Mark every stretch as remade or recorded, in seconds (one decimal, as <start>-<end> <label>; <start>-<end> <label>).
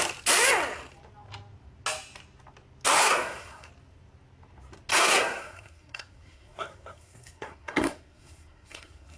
0.0-3.0 recorded; 3.0-3.7 remade; 3.7-4.9 recorded; 4.9-9.2 remade